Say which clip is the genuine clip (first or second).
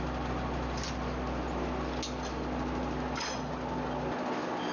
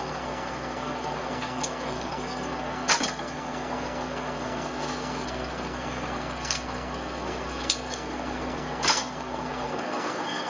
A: first